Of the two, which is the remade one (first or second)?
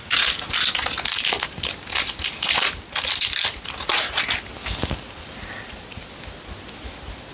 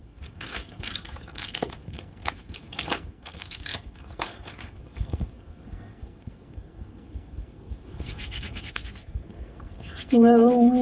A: second